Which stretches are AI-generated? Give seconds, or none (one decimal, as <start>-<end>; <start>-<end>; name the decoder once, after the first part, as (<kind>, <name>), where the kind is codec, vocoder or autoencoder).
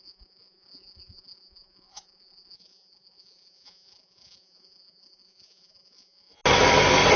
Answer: 0.0-6.4 (vocoder, Vocos)